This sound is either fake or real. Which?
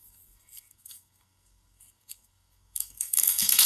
fake